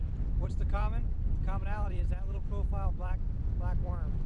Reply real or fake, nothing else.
fake